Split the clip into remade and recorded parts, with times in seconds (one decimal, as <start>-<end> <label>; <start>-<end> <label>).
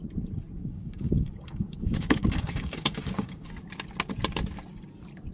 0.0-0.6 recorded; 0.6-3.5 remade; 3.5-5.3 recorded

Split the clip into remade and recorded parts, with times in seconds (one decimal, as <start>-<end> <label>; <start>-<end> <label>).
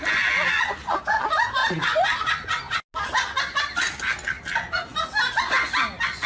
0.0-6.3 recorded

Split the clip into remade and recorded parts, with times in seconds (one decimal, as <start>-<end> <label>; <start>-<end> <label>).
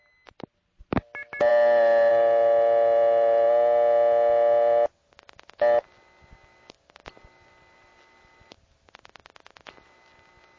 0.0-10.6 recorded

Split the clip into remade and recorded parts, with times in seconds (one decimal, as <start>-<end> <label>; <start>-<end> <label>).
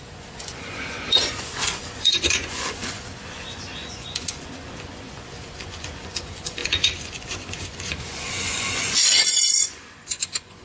0.0-10.6 remade